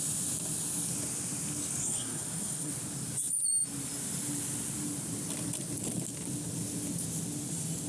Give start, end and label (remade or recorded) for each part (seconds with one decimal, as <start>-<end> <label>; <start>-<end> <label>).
0.0-1.8 recorded; 1.8-2.7 remade; 2.7-7.9 recorded